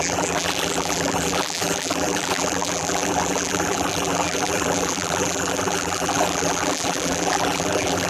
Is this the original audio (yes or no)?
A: no